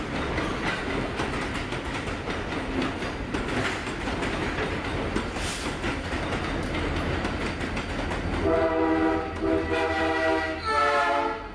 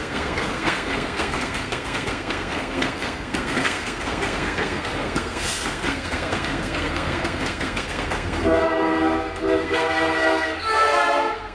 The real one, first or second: first